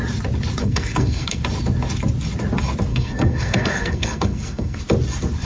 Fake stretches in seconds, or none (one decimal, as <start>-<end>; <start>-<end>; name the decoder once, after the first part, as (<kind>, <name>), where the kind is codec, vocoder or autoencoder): 0.6-1.4 (codec, SNAC); 2.9-4.8